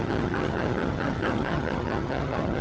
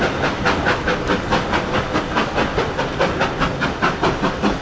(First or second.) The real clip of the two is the second